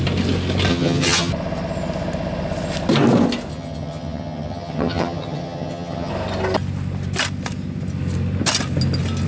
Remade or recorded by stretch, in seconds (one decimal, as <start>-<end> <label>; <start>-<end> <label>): 0.0-0.7 recorded; 0.7-1.3 remade; 1.3-3.5 recorded; 3.5-6.1 remade; 6.1-9.3 recorded